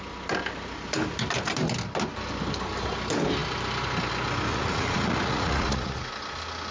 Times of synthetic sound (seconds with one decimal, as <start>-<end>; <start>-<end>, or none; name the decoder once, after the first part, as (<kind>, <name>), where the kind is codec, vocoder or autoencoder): 4.5-6.1 (vocoder, Vocos)